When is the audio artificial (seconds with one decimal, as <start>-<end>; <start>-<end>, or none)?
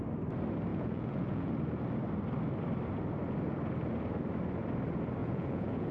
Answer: 0.7-1.5; 5.2-5.9